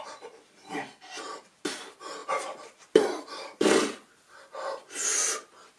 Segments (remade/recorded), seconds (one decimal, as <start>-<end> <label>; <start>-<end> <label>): 0.0-2.2 recorded; 2.2-4.9 remade; 4.9-5.8 recorded